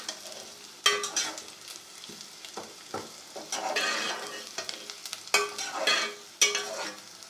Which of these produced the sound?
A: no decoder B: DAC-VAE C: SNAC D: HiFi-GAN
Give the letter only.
A